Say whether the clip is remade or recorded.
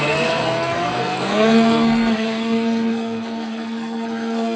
remade